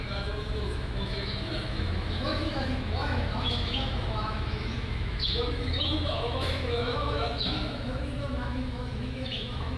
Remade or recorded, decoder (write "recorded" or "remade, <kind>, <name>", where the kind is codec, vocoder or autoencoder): remade, autoencoder, DAC-VAE